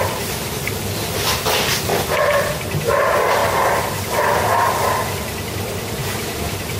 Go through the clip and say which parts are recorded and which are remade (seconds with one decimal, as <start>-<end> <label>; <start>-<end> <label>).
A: 0.0-1.9 remade; 1.9-2.5 recorded; 2.5-6.0 remade; 6.0-6.8 recorded